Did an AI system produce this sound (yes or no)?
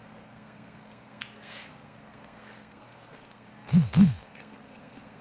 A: yes